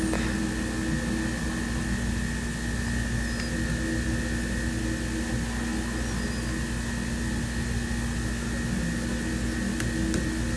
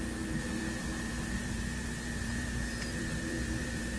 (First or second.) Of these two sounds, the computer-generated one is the second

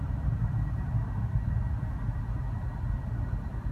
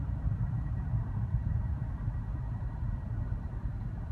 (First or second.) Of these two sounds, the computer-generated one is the second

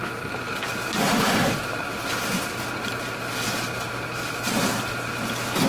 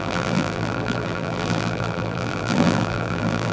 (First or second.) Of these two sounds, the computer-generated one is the second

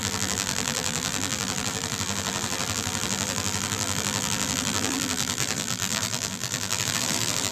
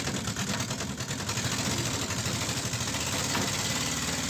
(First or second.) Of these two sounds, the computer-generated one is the first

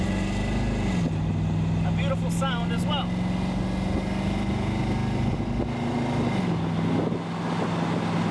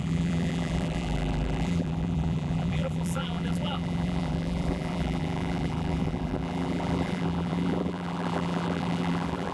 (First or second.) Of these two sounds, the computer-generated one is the second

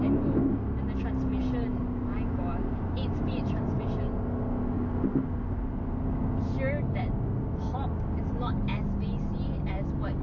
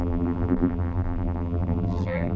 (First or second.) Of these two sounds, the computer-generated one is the second